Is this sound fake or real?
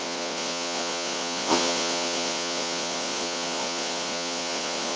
fake